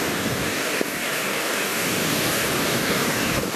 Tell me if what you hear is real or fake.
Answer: fake